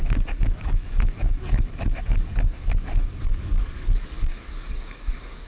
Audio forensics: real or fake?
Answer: fake